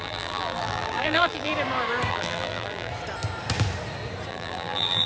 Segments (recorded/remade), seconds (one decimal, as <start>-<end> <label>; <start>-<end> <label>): 0.0-1.5 remade; 1.5-2.1 recorded; 2.1-2.9 remade; 2.9-4.3 recorded; 4.3-5.1 remade